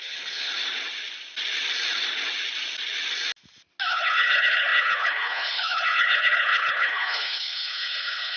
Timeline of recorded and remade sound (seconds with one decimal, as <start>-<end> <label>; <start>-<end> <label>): 0.0-0.5 remade; 0.5-3.9 recorded; 3.9-8.4 remade